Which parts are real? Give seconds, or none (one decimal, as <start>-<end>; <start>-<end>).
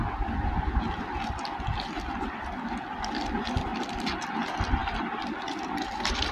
0.0-3.7; 4.3-4.8